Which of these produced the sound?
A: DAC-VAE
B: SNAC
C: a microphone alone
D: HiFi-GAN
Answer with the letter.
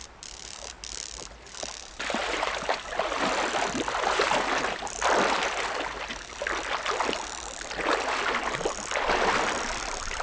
C